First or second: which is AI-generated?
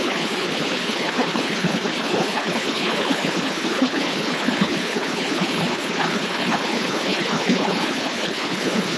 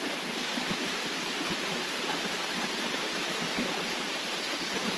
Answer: first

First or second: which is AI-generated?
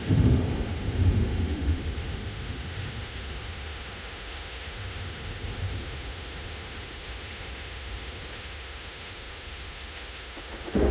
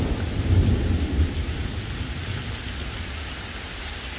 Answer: first